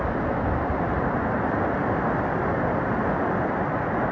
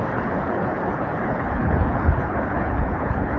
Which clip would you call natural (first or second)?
first